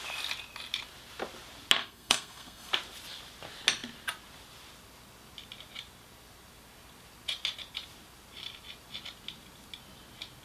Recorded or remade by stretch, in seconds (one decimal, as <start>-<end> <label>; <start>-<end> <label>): 0.0-1.8 recorded; 1.8-2.7 remade; 2.7-10.4 recorded